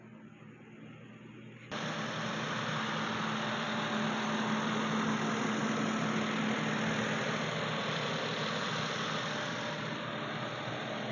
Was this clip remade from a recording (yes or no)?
no